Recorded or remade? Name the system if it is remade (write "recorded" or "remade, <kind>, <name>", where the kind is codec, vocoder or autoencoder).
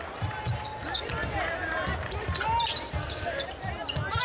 recorded